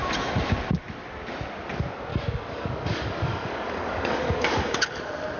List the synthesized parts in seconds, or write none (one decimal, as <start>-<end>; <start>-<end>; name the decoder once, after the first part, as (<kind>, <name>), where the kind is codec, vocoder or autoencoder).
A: 2.1-5.0 (codec, DAC)

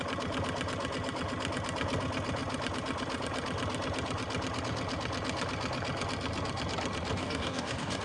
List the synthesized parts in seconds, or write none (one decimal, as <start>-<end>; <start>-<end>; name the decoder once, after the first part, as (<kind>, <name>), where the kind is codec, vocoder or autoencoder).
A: 7.2-8.0 (codec, DAC)

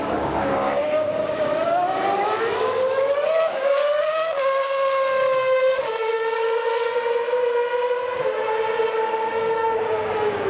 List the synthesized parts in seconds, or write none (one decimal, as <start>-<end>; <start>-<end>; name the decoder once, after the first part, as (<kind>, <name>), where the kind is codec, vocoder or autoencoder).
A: 0.0-6.9 (codec, DAC); 8.9-10.5

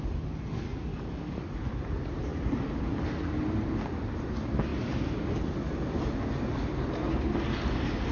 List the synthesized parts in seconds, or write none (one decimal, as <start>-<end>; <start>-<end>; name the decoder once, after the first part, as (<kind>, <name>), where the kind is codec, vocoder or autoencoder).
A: 0.9-1.6 (codec, DAC)

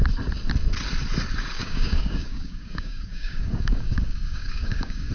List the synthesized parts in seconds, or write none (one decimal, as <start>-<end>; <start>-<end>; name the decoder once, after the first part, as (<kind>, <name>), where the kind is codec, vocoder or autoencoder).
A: 1.6-5.1 (codec, DAC)

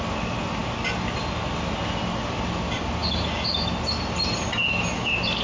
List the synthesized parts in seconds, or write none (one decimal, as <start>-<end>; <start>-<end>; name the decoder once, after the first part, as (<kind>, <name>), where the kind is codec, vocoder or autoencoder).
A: none